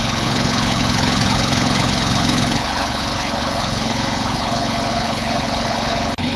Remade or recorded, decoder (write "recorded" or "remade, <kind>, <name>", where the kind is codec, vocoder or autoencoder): remade, codec, HILCodec